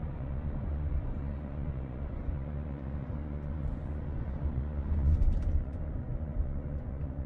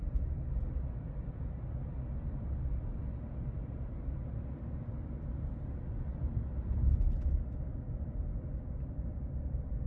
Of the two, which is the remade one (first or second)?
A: first